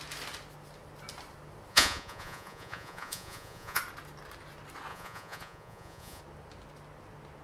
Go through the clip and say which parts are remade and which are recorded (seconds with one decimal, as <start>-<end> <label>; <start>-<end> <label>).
0.0-1.7 recorded; 1.7-3.8 remade; 3.8-4.9 recorded; 4.9-6.2 remade; 6.2-7.4 recorded